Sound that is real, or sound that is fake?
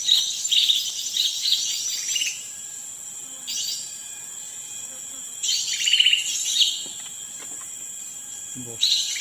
fake